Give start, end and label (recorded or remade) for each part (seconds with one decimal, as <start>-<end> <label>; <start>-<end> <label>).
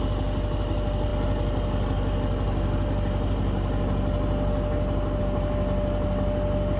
0.0-6.8 recorded